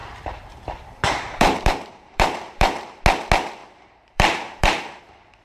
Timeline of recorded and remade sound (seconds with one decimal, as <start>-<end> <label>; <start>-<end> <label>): 0.0-3.0 remade; 3.0-3.6 recorded; 3.6-5.0 remade; 5.0-5.4 recorded